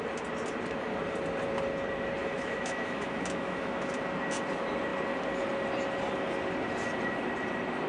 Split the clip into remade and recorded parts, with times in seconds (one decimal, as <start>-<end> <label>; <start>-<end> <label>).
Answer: 0.0-2.2 recorded; 2.2-3.9 remade; 3.9-7.9 recorded